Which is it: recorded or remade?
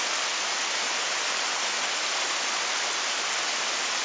recorded